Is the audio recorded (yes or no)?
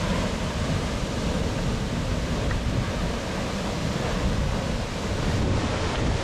yes